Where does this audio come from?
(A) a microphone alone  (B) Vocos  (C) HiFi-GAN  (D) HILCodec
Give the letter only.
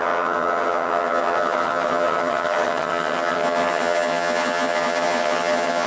C